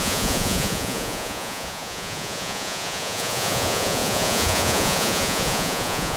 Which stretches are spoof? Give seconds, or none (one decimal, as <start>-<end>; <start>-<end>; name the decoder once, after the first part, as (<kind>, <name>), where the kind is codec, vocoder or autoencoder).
0.0-6.2 (vocoder, Vocos)